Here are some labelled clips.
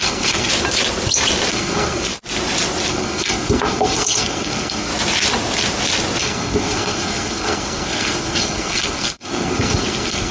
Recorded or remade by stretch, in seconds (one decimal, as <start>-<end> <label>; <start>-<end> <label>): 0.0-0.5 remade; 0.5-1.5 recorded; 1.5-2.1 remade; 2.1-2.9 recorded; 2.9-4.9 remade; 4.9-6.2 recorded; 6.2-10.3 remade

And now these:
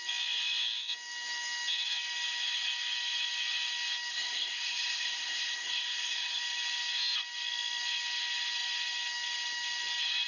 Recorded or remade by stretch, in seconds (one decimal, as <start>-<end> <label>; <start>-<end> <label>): 0.0-4.1 recorded; 4.1-6.4 remade; 6.4-10.3 recorded

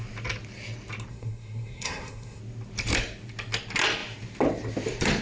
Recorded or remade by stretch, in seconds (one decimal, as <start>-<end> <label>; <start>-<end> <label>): 0.0-1.1 recorded; 1.1-2.4 remade; 2.4-5.2 recorded

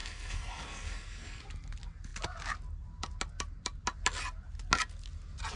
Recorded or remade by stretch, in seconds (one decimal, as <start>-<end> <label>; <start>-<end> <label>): 0.0-1.4 remade; 1.4-5.6 recorded

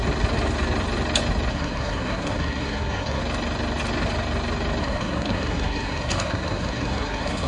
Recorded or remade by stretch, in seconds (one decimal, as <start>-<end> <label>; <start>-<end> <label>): 0.0-1.5 recorded; 1.5-3.2 remade; 3.2-4.8 recorded; 4.8-7.5 remade

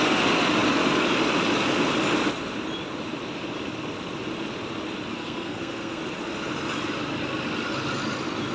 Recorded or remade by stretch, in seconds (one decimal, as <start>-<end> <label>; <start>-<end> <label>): 0.0-5.1 recorded; 5.1-6.0 remade; 6.0-8.5 recorded

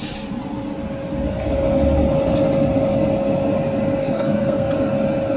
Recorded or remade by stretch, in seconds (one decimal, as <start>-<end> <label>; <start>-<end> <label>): 0.0-4.0 recorded; 4.0-4.7 remade; 4.7-5.4 recorded

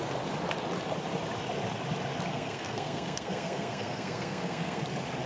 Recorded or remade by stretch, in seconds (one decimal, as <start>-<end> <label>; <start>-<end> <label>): 0.0-2.3 recorded; 2.3-4.8 remade; 4.8-5.3 recorded